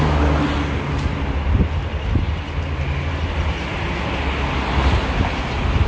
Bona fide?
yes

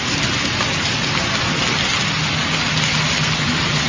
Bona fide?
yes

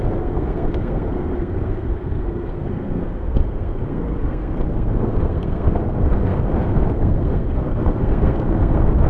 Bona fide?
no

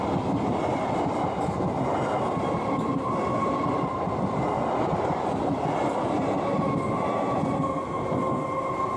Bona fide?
yes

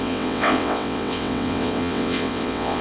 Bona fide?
no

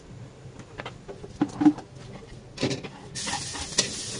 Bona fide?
yes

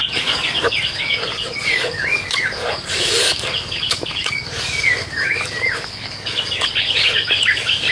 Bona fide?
no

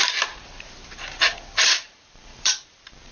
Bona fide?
no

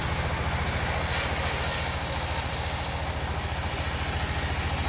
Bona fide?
yes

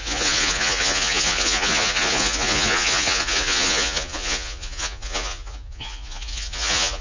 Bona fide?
no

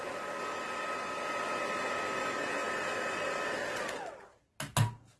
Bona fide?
yes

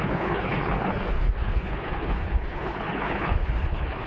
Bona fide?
no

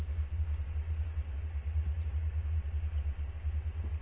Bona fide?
yes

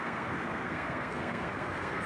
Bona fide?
no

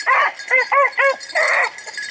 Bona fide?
yes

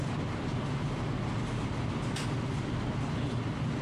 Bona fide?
yes